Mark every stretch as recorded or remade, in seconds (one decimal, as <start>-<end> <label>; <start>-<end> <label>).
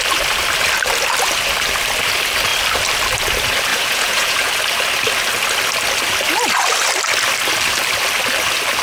0.0-3.7 recorded; 3.7-4.5 remade; 4.5-8.8 recorded